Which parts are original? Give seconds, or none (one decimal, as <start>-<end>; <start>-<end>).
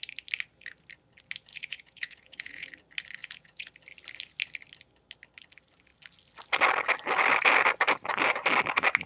0.0-1.5; 2.7-3.2; 3.7-9.1